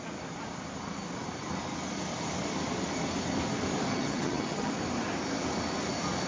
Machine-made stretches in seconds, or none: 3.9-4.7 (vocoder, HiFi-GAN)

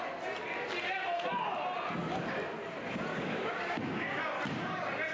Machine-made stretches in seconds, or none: 3.1-4.2 (codec, DAC)